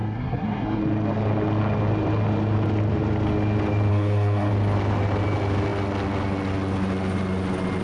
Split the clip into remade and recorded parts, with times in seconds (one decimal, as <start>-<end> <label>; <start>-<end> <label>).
0.0-0.8 remade; 0.8-3.9 recorded; 3.9-4.5 remade; 4.5-7.8 recorded